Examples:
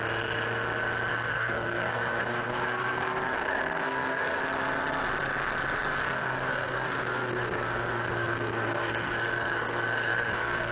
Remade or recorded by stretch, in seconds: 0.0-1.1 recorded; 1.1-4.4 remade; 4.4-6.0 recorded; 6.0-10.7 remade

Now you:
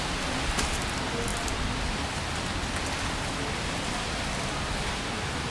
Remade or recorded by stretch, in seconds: 0.0-5.5 recorded

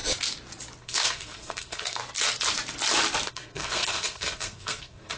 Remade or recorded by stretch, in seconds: 0.0-0.8 recorded; 0.8-2.0 remade; 2.0-3.3 recorded; 3.3-5.2 remade

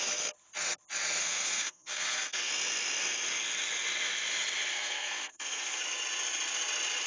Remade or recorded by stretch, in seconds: 0.0-1.2 recorded; 1.2-2.5 remade; 2.5-4.7 recorded; 4.7-5.8 remade; 5.8-7.1 recorded

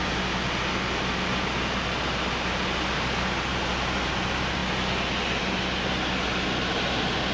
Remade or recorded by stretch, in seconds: 0.0-7.3 recorded

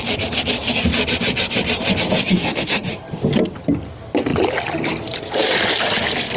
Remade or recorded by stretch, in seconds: 0.0-2.3 recorded; 2.3-2.9 remade; 2.9-6.4 recorded

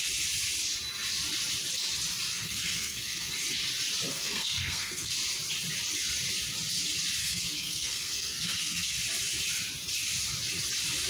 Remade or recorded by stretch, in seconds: 0.0-2.3 recorded; 2.3-3.3 remade; 3.3-4.1 recorded; 4.1-5.1 remade; 5.1-7.2 recorded; 7.2-9.0 remade; 9.0-11.1 recorded